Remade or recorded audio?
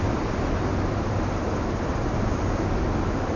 recorded